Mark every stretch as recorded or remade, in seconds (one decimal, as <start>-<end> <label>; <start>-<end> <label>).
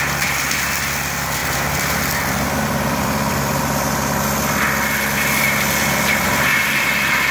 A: 0.0-1.4 recorded; 1.4-3.6 remade; 3.6-7.3 recorded